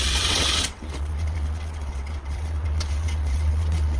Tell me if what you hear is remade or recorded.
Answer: remade